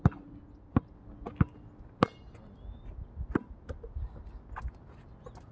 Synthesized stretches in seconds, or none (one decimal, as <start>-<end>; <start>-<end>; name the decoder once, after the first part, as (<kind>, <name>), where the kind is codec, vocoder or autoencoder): none